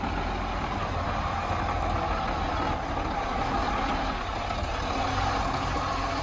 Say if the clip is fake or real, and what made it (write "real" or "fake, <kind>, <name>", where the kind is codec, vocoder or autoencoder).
real